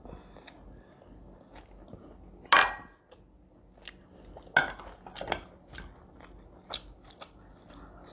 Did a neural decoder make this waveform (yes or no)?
no